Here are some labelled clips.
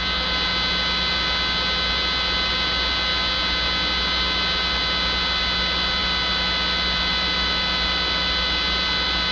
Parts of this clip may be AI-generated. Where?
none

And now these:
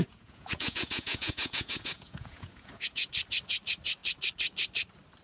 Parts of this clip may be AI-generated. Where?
0.0-3.1 (vocoder, Vocos)

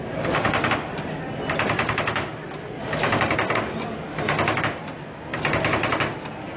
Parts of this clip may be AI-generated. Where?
none

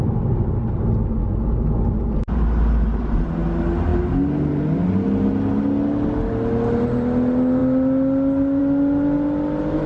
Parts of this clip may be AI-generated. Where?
none